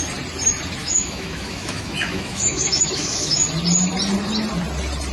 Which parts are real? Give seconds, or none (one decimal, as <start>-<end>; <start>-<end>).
0.0-0.8; 3.5-5.1